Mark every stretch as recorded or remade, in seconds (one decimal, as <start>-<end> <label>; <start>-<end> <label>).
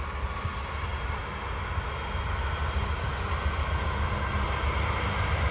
0.0-5.5 recorded